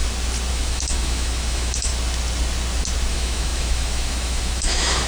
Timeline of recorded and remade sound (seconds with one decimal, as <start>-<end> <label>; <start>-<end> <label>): 0.0-0.5 recorded; 0.5-1.9 remade; 1.9-3.1 recorded; 3.1-5.1 remade